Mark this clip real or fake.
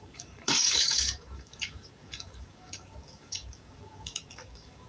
fake